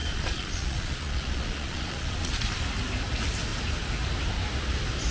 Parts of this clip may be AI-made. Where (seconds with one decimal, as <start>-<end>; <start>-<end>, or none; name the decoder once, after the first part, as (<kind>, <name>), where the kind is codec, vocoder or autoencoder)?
0.0-2.3 (vocoder, Vocos)